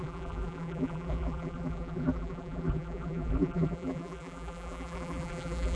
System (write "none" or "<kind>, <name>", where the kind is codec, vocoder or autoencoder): vocoder, BigVGAN v2